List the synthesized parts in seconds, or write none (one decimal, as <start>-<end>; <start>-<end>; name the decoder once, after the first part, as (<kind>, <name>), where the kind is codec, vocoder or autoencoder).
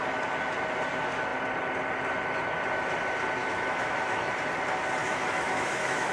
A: 3.4-4.3 (autoencoder, DAC-VAE); 5.0-6.1